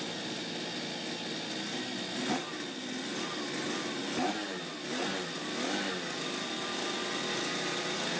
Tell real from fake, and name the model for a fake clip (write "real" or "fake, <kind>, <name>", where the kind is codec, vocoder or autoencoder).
real